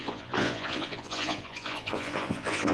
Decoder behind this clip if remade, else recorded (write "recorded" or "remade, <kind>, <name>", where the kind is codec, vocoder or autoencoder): remade, vocoder, Vocos